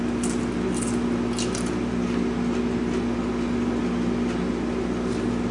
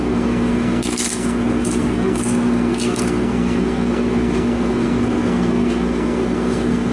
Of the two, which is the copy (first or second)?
second